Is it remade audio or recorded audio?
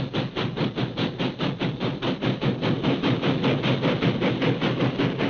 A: recorded